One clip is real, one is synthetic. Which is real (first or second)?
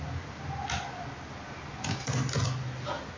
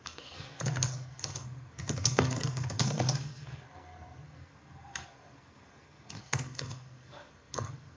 first